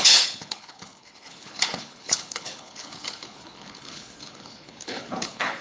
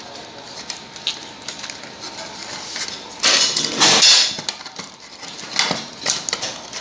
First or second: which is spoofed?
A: first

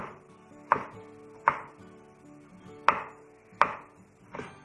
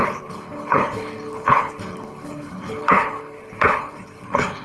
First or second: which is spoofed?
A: second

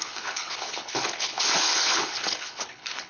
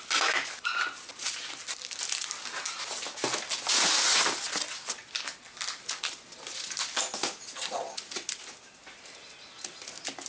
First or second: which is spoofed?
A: first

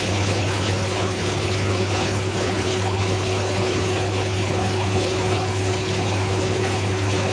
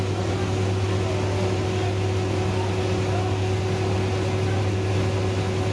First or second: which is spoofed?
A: first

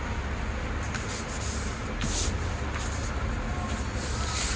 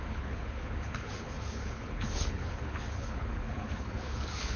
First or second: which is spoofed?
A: second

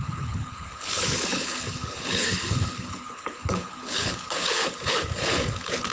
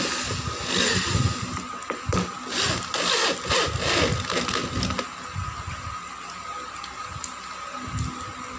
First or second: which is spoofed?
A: first